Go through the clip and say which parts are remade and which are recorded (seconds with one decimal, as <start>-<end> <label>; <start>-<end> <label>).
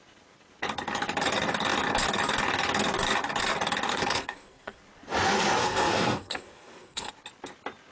0.0-3.9 recorded; 3.9-4.8 remade; 4.8-5.6 recorded; 5.6-7.1 remade; 7.1-7.9 recorded